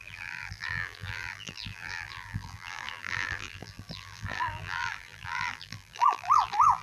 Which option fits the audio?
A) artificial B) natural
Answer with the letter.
A